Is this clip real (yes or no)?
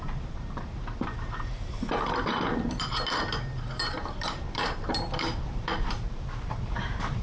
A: no